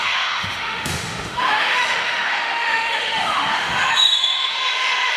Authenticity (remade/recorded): remade